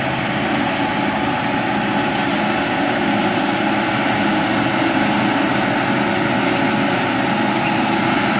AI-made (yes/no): no